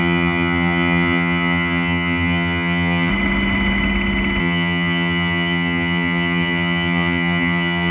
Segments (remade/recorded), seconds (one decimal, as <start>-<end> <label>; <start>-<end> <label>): 0.0-3.1 remade; 3.1-4.4 recorded; 4.4-7.9 remade

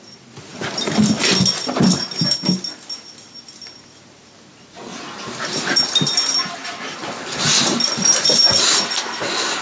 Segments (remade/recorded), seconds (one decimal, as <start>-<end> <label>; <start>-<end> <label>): 0.0-9.6 recorded

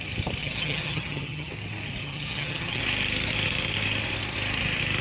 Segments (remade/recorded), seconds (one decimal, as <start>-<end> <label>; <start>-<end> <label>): 0.0-0.4 recorded; 0.4-1.5 remade; 1.5-2.0 recorded; 2.0-2.8 remade; 2.8-5.0 recorded

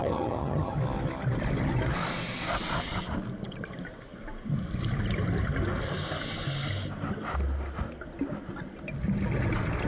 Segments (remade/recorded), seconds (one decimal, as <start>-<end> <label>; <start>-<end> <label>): 0.0-0.8 remade; 0.8-9.9 recorded

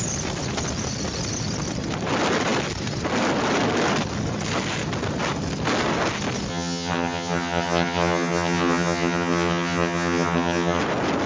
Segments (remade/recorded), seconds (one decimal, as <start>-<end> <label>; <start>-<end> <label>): 0.0-6.5 recorded; 6.5-10.8 remade; 10.8-11.3 recorded

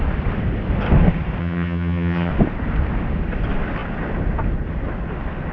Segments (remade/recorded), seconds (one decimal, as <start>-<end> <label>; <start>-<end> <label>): 0.0-1.4 recorded; 1.4-2.3 remade; 2.3-5.5 recorded

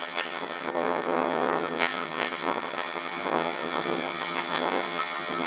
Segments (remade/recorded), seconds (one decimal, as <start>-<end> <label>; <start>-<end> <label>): 0.0-5.5 remade

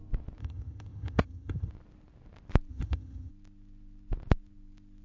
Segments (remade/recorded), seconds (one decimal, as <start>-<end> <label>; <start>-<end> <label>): 0.0-0.4 recorded; 0.4-1.7 remade; 1.7-2.7 recorded; 2.7-3.3 remade; 3.3-5.0 recorded